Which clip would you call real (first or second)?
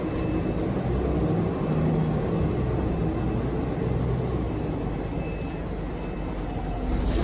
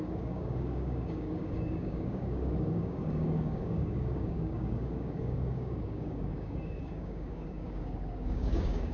first